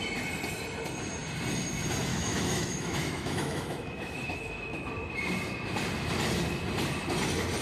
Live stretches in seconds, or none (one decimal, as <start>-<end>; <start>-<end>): 0.0-2.1; 4.9-7.6

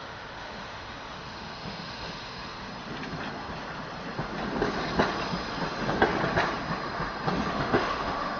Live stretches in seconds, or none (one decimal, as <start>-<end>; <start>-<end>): 2.7-7.5